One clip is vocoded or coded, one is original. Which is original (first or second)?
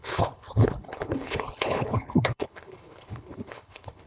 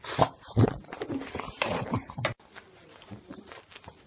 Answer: second